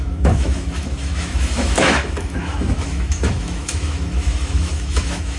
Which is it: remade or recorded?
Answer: remade